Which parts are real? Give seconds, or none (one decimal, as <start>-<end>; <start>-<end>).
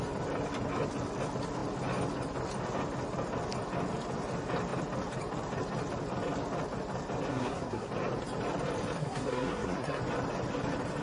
0.0-7.3; 7.9-9.0; 10.0-11.0